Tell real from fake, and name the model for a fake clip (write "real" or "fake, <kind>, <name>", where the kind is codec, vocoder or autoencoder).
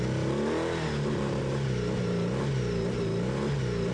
real